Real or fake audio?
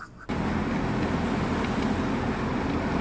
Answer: real